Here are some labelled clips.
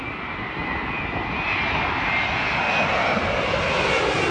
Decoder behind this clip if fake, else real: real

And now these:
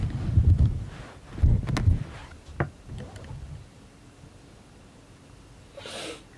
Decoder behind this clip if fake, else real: real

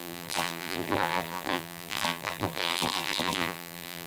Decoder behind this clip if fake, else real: fake, vocoder, BigVGAN v2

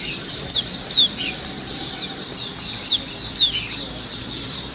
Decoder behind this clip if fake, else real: real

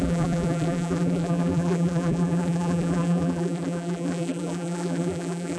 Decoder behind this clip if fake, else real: fake, vocoder, BigVGAN v2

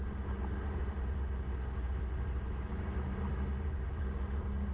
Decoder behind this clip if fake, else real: real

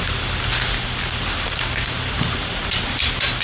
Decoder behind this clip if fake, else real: real